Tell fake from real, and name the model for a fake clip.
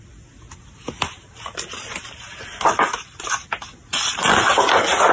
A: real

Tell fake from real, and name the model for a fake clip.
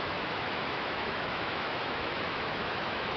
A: fake, autoencoder, DAC-VAE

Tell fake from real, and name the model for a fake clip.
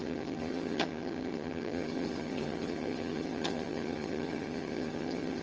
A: fake, vocoder, HiFi-GAN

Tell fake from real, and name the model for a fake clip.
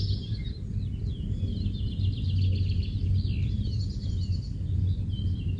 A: real